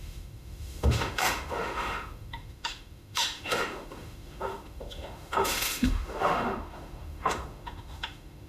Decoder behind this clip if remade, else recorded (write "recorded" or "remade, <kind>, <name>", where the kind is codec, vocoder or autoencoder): remade, autoencoder, DAC-VAE